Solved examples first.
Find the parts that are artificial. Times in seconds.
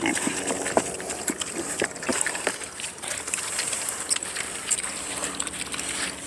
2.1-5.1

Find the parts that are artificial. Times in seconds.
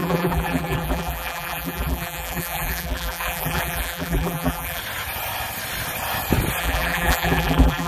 0.0-4.8; 6.6-7.9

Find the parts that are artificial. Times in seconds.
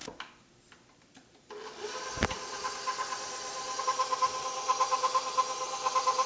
0.0-3.8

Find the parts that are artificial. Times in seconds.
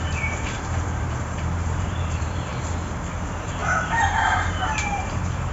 0.0-2.5; 3.2-5.5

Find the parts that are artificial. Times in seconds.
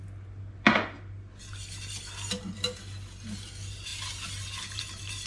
none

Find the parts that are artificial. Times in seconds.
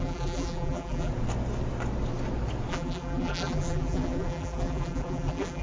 0.0-1.1; 2.7-5.6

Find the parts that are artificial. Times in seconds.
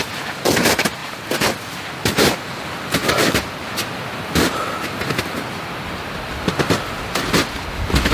1.0-2.1; 3.0-3.7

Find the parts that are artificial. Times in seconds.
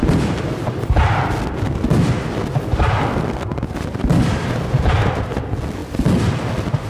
none